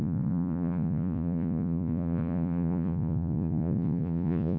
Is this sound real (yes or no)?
no